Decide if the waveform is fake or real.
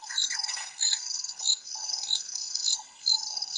fake